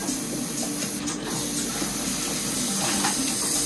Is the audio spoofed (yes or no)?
no